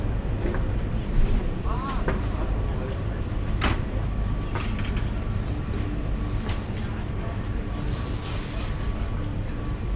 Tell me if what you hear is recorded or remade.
recorded